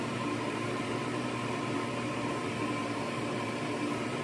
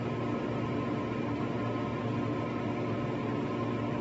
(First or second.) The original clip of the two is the second